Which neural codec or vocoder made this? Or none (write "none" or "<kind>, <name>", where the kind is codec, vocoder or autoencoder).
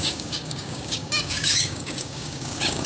codec, DAC